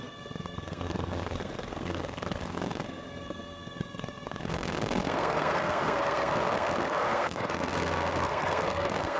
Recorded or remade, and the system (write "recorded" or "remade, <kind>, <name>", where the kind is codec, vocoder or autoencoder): remade, codec, SNAC